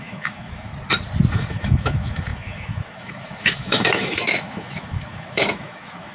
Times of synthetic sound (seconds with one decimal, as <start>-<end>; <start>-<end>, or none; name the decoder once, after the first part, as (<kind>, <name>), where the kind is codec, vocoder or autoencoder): 0.0-0.7 (autoencoder, DAC-VAE); 1.3-6.1